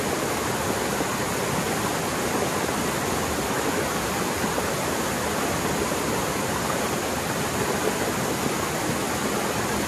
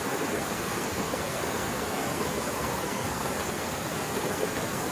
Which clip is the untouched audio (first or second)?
first